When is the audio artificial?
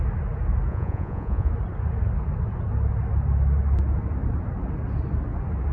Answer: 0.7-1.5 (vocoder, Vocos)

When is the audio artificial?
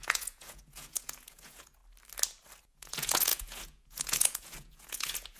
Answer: 0.0-1.8 (vocoder, Vocos); 2.6-5.4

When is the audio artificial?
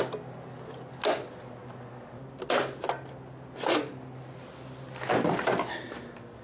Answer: none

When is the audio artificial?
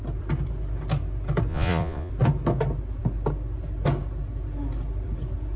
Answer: 1.5-2.1 (vocoder, Vocos)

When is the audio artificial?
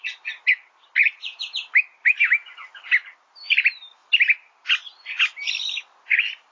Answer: none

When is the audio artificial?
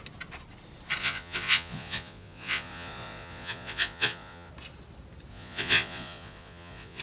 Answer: 1.0-4.5 (vocoder, Vocos); 5.3-7.0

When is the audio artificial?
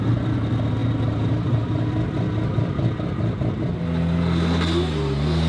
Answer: none